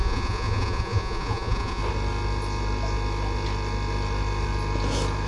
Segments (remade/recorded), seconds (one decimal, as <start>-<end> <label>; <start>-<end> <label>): 0.0-1.8 remade; 1.8-5.3 recorded